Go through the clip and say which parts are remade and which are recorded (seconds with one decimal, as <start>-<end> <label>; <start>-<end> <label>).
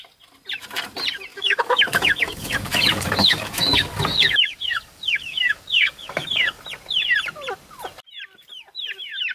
0.0-1.3 recorded; 1.3-6.6 remade; 6.6-9.3 recorded